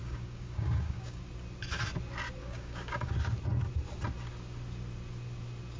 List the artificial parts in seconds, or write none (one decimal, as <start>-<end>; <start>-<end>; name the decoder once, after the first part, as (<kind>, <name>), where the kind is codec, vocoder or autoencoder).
0.0-1.2 (codec, DAC); 2.4-3.1